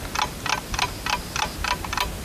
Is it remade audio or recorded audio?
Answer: recorded